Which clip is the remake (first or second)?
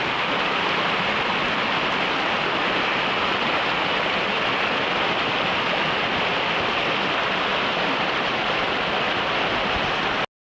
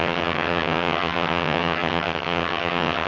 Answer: second